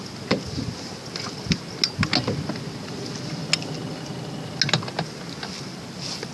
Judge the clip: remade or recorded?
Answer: recorded